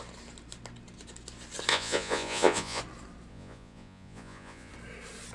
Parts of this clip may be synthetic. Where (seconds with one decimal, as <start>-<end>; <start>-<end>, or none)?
1.7-2.8; 3.3-4.7